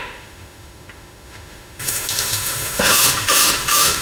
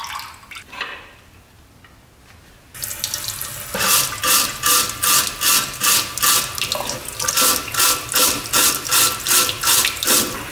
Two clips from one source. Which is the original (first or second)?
second